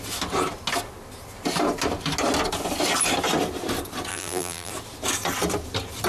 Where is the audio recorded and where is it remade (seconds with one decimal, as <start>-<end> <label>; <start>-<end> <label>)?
0.0-4.1 recorded; 4.1-4.7 remade; 4.7-6.1 recorded